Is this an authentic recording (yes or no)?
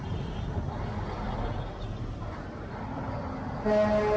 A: yes